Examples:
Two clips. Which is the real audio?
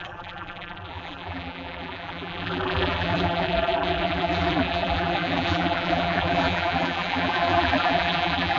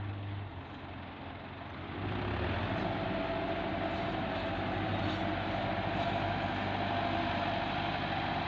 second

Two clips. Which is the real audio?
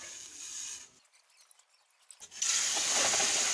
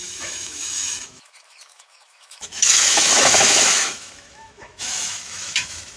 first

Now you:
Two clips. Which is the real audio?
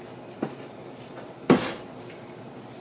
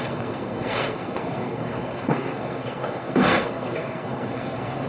first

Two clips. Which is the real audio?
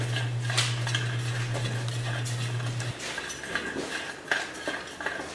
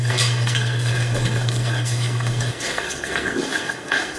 first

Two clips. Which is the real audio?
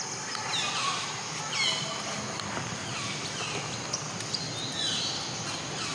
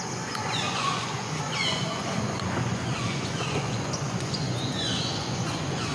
first